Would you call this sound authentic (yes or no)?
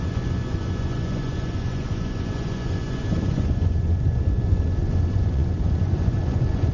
no